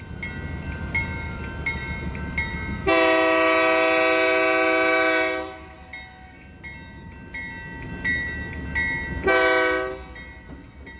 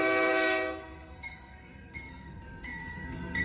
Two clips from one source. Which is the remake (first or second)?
second